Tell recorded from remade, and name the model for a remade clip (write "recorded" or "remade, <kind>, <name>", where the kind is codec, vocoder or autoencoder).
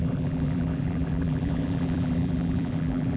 remade, vocoder, BigVGAN v2